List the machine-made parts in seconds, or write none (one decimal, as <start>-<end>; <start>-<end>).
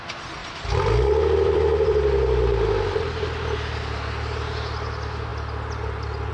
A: 0.4-3.2